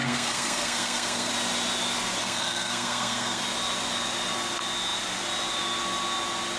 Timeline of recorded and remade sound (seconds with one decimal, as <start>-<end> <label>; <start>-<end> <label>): 0.0-1.3 remade; 1.3-2.2 recorded; 2.2-3.4 remade; 3.4-6.6 recorded